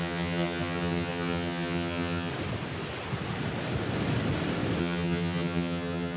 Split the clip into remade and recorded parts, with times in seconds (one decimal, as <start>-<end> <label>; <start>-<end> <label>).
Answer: 0.0-2.3 remade; 2.3-4.8 recorded; 4.8-6.2 remade